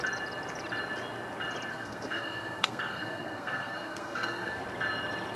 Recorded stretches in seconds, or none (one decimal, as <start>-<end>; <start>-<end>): 0.0-1.7; 4.6-5.4